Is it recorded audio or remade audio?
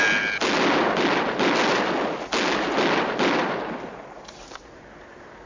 recorded